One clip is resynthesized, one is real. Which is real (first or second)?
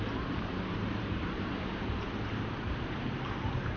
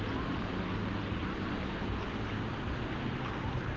second